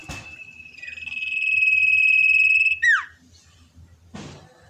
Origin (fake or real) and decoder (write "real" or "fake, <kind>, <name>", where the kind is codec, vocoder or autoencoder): real